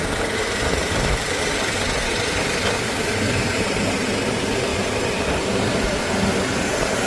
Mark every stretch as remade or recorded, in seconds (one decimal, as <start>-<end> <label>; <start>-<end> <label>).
0.0-0.8 recorded; 0.8-1.4 remade; 1.4-7.1 recorded